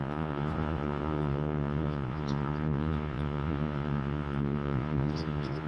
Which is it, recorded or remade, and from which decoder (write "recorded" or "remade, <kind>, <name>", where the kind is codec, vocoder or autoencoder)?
remade, vocoder, Vocos